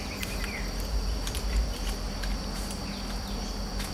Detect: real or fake real